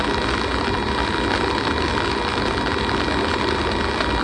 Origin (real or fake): real